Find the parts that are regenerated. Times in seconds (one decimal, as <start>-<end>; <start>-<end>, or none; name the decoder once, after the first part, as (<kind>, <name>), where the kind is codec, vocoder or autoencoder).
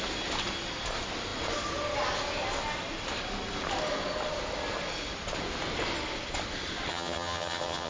6.9-7.9 (vocoder, HiFi-GAN)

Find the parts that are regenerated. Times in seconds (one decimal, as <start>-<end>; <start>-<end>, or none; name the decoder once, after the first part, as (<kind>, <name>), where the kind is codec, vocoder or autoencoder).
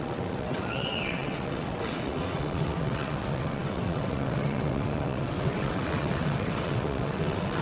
0.0-7.6 (vocoder, WaveNeXt)